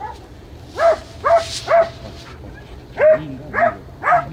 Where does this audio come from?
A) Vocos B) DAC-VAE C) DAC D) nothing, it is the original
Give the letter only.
D